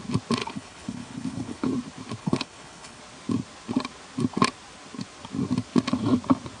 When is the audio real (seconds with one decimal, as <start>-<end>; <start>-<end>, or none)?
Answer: 0.0-0.4; 1.7-2.2; 3.0-6.6